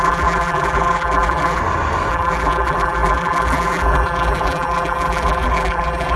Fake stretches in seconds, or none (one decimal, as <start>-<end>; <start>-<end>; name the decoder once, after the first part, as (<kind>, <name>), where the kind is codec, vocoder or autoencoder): 0.0-1.6 (vocoder, BigVGAN v2); 2.1-6.2